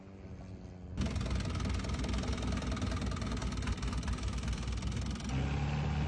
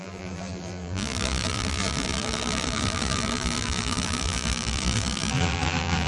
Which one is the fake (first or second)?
second